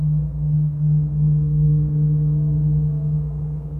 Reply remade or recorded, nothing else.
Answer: remade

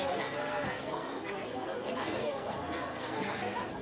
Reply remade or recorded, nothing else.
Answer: remade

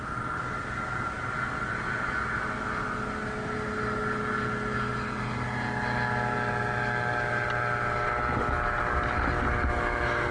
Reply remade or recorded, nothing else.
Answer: recorded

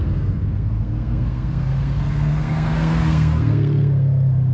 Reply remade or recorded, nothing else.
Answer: remade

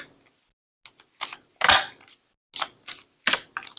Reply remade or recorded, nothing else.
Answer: recorded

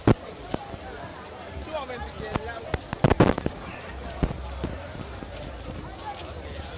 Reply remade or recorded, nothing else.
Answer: recorded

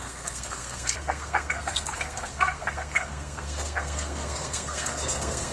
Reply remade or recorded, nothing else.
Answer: remade